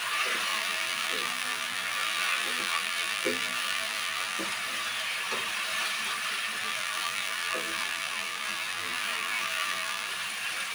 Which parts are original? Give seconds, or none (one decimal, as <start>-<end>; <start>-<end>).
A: 0.0-0.5; 4.4-6.6; 10.1-10.7